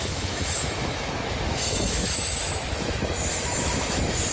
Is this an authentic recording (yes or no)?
no